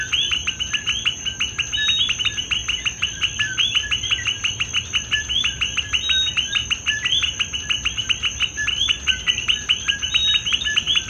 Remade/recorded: recorded